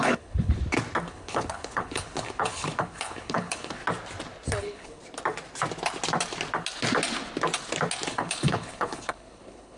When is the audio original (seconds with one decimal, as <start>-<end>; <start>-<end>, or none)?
0.6-1.1; 3.8-4.6; 5.0-8.1